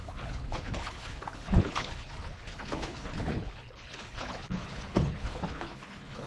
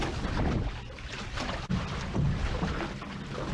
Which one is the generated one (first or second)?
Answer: first